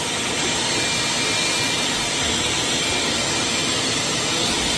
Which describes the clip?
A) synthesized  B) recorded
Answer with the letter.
B